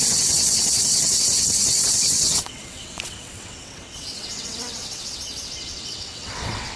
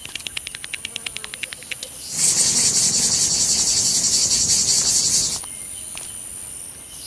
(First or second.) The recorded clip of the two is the second